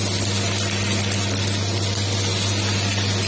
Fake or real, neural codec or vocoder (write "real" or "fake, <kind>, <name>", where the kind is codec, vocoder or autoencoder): real